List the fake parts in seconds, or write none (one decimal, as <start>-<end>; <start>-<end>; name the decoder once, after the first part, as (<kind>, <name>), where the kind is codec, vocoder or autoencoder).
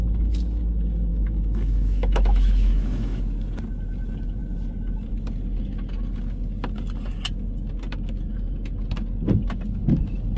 1.1-3.2 (autoencoder, DAC-VAE)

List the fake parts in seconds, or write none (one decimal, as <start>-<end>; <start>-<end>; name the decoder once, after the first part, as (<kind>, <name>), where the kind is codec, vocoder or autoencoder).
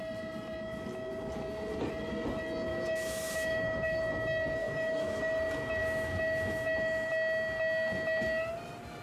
2.7-4.0 (autoencoder, DAC-VAE); 4.6-5.2; 5.8-7.1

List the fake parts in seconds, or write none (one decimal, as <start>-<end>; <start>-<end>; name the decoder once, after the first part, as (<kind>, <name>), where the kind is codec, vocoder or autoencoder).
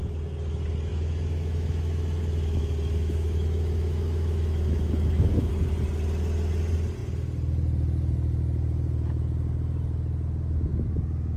0.9-5.5 (autoencoder, DAC-VAE)